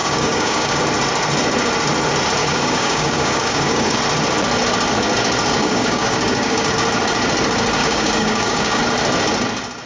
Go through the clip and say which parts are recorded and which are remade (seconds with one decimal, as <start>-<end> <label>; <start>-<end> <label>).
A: 0.0-0.8 remade; 0.8-2.4 recorded; 2.4-4.0 remade; 4.0-5.6 recorded; 5.6-6.7 remade; 6.7-7.8 recorded; 7.8-8.8 remade; 8.8-9.9 recorded